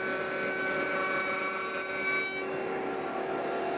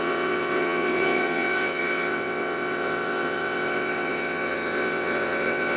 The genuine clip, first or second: first